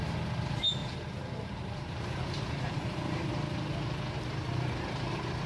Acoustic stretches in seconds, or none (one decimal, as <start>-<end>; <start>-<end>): 0.0-0.8; 3.3-5.5